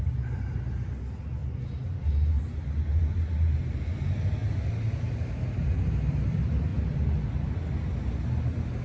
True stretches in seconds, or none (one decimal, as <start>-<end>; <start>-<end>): 0.0-8.8